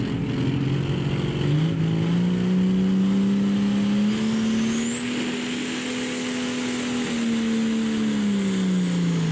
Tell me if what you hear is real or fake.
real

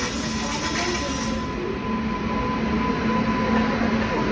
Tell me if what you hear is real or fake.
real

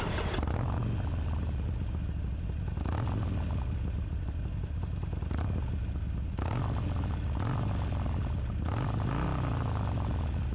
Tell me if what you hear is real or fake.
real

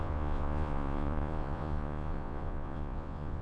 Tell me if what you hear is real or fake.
fake